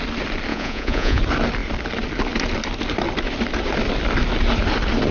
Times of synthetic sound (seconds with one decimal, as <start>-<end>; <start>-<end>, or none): 0.5-1.2